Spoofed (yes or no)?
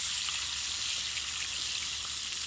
no